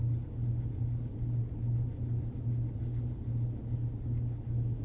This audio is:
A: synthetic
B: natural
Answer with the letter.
B